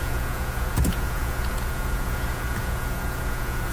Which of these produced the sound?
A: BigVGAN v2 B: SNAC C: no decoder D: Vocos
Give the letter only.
D